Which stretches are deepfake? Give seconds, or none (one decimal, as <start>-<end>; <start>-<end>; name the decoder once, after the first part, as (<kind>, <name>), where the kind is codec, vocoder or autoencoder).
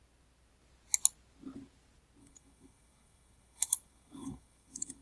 2.2-5.0 (autoencoder, DAC-VAE)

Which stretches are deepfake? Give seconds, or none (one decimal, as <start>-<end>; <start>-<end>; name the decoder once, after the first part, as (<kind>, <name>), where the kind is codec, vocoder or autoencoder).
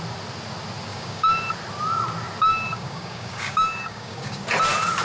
0.9-1.4 (codec, DAC); 2.5-4.4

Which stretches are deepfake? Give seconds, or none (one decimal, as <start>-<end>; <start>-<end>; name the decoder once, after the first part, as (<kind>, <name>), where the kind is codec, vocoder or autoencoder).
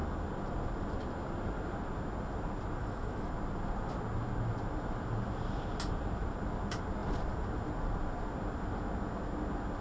2.8-3.3 (autoencoder, DAC-VAE)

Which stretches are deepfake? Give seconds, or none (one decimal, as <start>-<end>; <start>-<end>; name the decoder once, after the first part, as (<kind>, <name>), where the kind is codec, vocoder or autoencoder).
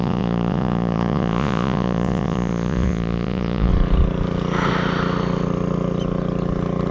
0.0-3.7 (vocoder, Vocos)